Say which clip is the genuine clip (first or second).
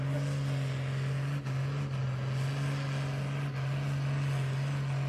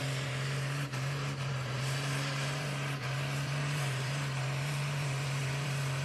first